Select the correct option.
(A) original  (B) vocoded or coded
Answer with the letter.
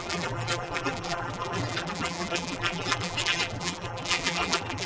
B